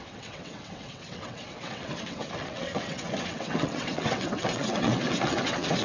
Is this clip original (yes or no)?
no